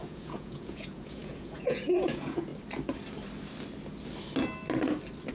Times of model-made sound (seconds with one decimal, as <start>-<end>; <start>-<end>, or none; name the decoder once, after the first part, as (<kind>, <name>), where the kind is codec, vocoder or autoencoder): 0.0-2.5 (vocoder, Vocos)